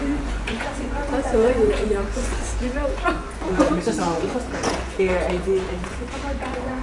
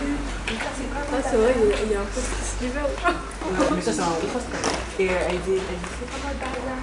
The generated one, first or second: first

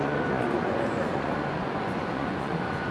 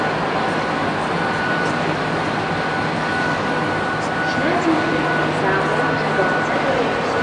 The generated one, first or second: first